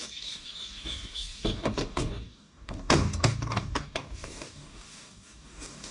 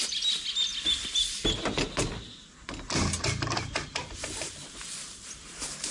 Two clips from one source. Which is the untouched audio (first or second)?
second